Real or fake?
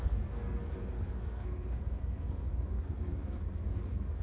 fake